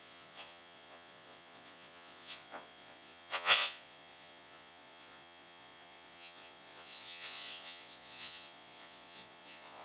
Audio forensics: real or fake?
fake